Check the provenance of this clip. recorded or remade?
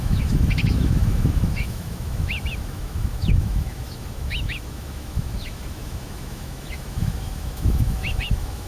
remade